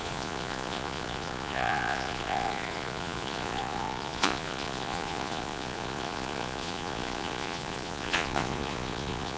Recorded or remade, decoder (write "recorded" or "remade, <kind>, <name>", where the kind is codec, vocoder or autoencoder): remade, vocoder, Vocos